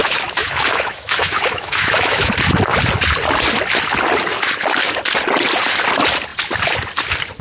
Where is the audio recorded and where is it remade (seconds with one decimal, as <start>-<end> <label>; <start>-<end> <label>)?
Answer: 0.0-2.3 remade; 2.3-7.4 recorded